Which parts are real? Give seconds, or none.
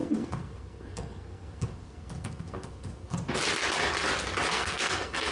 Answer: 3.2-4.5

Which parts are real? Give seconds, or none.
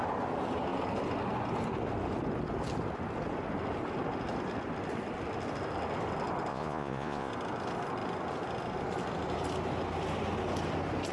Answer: 0.0-6.5; 7.3-11.1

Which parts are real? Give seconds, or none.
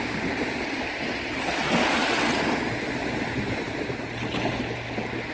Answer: 0.0-5.3